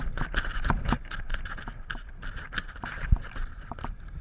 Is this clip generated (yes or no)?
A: yes